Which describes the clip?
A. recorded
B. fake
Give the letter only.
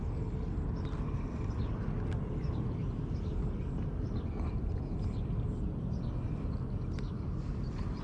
A